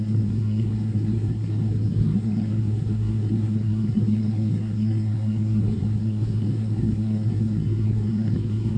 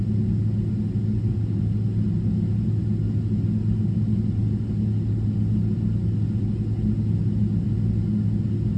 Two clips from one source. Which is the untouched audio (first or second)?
second